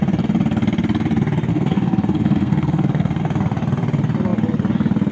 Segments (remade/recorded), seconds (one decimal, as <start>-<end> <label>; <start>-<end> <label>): 0.0-1.5 recorded; 1.5-3.2 remade; 3.2-5.1 recorded